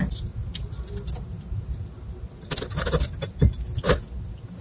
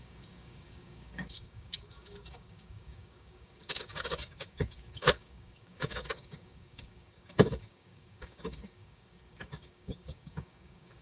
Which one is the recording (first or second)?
first